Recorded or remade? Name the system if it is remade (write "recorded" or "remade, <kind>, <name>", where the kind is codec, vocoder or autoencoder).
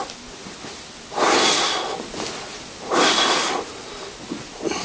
recorded